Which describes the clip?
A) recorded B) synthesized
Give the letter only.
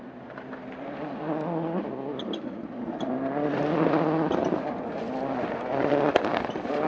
A